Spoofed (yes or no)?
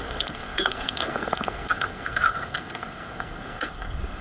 yes